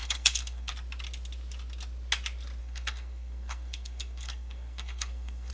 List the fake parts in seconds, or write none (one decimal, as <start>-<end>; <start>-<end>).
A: 0.0-0.7; 2.6-5.5